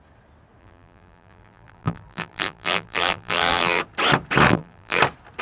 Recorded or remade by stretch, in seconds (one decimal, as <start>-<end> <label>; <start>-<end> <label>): 0.0-0.6 recorded; 0.6-3.8 remade; 3.8-4.5 recorded; 4.5-5.0 remade; 5.0-5.4 recorded